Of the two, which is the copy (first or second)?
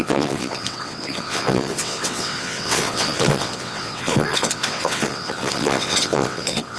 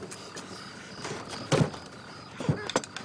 first